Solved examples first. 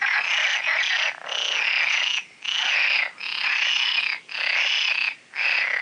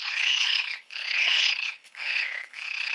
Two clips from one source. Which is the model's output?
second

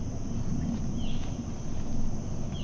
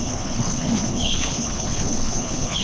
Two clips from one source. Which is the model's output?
second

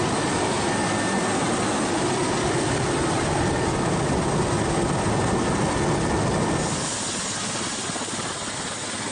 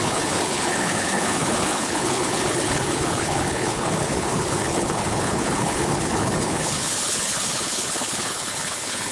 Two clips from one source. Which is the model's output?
second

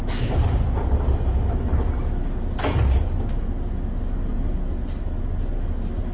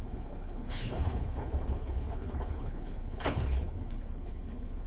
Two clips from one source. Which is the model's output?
second